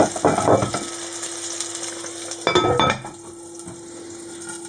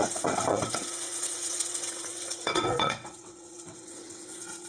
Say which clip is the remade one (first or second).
second